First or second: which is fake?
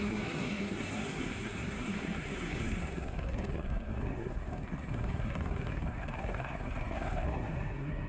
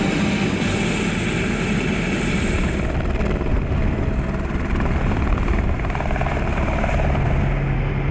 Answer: first